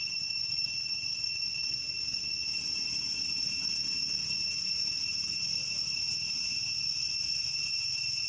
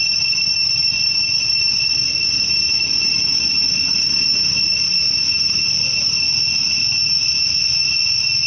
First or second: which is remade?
first